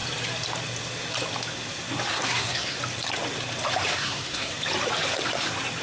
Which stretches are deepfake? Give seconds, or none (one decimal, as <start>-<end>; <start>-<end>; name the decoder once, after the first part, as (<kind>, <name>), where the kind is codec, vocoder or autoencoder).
2.1-2.8 (codec, SNAC); 3.9-4.5